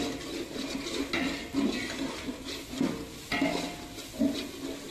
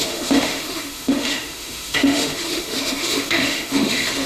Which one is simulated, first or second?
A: second